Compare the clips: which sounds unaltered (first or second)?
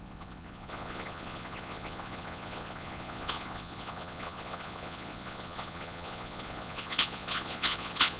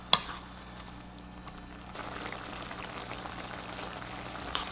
second